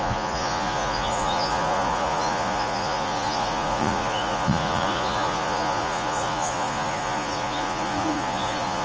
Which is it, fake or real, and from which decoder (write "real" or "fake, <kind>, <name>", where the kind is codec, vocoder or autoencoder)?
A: fake, vocoder, Vocos